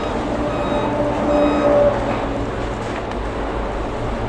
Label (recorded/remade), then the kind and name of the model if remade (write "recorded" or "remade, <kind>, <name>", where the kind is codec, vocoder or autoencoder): recorded